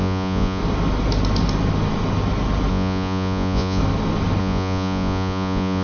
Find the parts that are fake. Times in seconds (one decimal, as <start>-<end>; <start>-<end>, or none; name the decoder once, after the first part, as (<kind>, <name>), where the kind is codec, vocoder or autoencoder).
0.0-0.6 (vocoder, Vocos); 2.7-3.8; 4.4-5.8